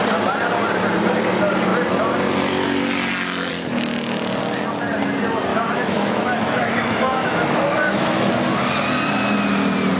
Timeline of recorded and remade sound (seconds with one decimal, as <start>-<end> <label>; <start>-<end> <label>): 0.0-5.5 recorded; 5.5-8.3 remade; 8.3-10.0 recorded